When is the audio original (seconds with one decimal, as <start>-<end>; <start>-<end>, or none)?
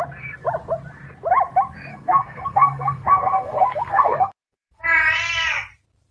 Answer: 0.0-1.9; 4.8-6.1